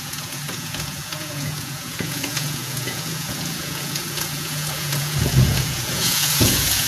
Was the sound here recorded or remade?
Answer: remade